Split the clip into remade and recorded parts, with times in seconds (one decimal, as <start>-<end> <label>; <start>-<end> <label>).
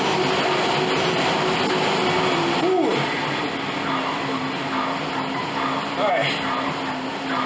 0.0-7.5 recorded